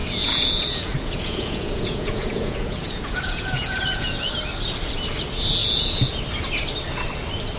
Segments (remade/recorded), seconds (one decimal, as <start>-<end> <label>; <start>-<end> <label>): 0.0-4.3 remade; 4.3-5.6 recorded; 5.6-6.2 remade; 6.2-7.6 recorded